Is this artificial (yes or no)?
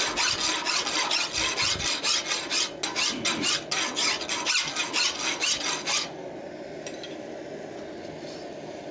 no